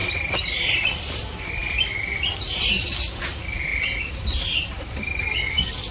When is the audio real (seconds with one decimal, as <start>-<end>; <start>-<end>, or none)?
1.1-3.7; 5.5-5.9